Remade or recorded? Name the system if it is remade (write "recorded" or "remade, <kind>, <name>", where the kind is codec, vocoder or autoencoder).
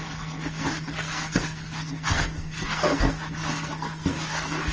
remade, codec, SNAC